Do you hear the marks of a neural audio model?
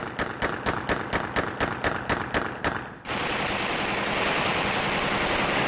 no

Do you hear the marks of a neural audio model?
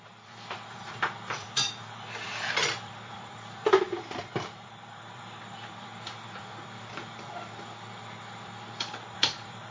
yes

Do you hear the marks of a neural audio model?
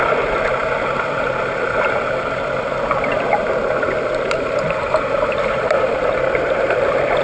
yes